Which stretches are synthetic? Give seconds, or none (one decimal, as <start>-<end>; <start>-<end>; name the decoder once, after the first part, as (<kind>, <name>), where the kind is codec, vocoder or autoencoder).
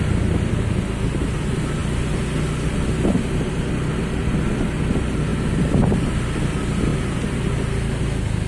none